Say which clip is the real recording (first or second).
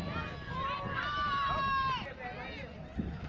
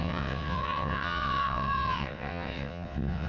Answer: first